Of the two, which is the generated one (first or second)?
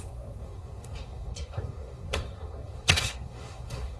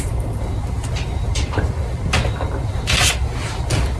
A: first